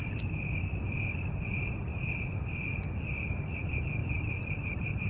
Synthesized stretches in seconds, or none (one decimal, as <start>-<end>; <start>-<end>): 1.9-2.5; 4.0-5.1